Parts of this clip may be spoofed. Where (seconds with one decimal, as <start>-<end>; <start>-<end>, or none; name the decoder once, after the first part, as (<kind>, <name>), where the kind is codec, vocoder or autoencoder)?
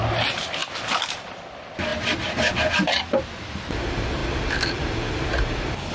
0.0-0.6 (vocoder, BigVGAN v2); 1.3-5.9